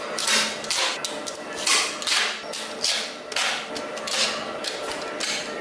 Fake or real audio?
real